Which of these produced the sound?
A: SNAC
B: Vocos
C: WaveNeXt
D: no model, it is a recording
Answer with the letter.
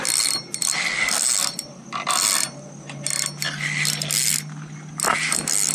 D